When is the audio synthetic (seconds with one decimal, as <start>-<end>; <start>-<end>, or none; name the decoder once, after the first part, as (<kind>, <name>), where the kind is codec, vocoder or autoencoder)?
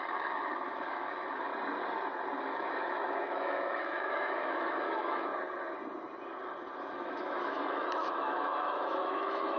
0.0-1.5 (autoencoder, DAC-VAE); 2.4-5.3; 6.9-9.6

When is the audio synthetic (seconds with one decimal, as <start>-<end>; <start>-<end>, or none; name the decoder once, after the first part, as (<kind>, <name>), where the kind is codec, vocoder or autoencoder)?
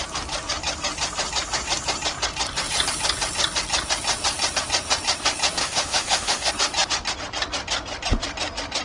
5.6-6.5 (autoencoder, DAC-VAE)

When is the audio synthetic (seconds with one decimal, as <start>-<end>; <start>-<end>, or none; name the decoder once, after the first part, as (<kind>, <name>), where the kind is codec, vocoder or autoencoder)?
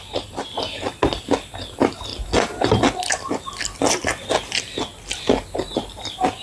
0.0-2.1 (vocoder, BigVGAN v2); 3.9-4.9; 6.0-6.4